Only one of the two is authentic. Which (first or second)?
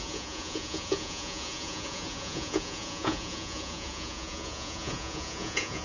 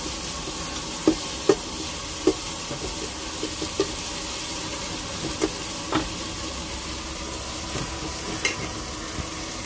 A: second